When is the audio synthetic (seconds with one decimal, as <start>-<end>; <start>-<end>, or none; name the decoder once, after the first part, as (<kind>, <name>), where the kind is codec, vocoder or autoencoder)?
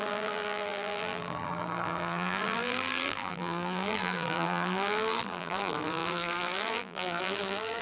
0.0-7.8 (vocoder, BigVGAN v2)